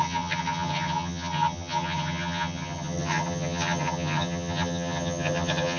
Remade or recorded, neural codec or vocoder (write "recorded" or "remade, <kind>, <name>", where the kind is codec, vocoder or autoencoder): remade, vocoder, HiFi-GAN